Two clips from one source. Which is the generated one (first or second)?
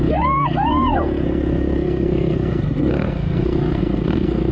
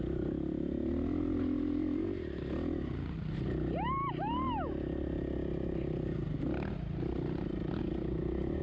first